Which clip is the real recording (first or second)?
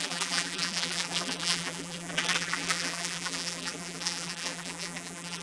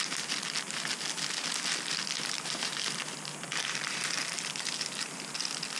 second